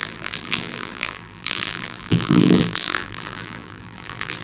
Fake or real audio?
fake